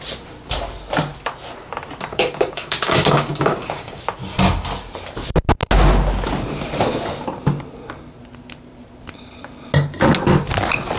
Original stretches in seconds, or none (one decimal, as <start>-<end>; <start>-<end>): 0.0-2.1; 4.0-11.0